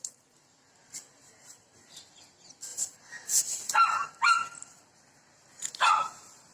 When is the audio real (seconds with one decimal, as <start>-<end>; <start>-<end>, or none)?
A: 0.0-6.5